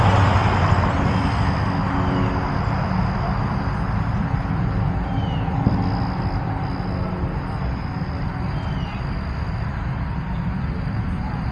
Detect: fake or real real